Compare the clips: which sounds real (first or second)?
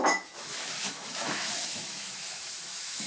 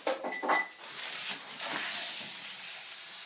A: second